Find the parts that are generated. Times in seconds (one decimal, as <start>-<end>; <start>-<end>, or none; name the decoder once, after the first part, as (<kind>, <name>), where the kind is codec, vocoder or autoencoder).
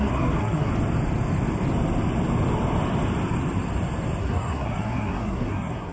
0.0-0.7 (codec, SNAC); 4.2-5.9